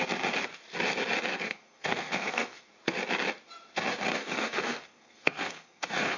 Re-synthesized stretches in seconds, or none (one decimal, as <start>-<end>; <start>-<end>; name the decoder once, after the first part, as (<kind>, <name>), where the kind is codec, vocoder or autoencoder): 1.3-2.7 (codec, SNAC); 4.2-6.2